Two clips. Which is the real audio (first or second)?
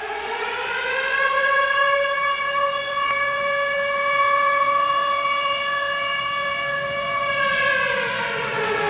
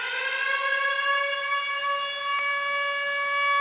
second